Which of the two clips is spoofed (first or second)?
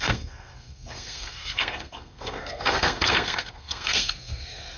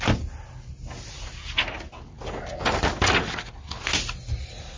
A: first